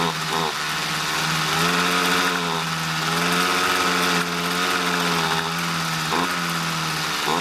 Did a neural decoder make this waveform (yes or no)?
no